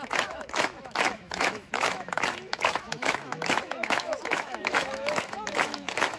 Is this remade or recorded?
remade